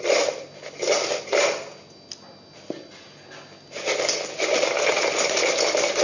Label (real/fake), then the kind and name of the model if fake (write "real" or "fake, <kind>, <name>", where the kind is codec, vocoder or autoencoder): real